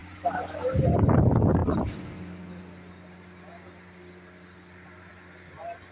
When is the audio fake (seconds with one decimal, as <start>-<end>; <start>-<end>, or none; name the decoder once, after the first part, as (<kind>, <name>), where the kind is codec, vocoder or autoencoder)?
0.0-0.7 (vocoder, BigVGAN v2); 1.6-5.1